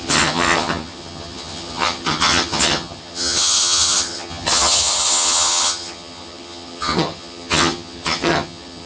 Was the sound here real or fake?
fake